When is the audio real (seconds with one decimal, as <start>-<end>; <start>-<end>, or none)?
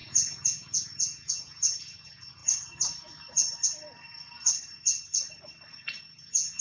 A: 2.4-6.0